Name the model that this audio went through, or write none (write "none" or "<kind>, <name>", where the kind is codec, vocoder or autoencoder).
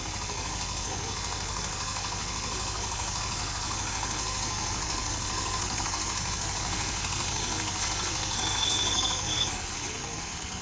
codec, SNAC